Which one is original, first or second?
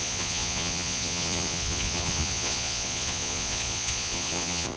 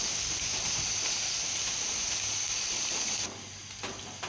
second